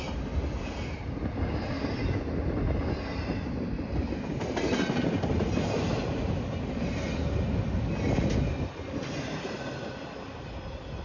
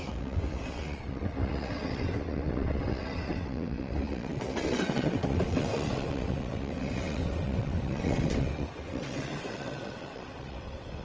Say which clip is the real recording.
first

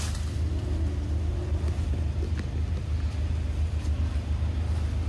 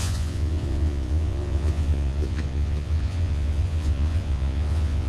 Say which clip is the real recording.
first